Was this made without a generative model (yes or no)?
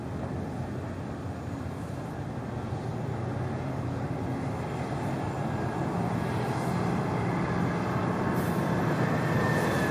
yes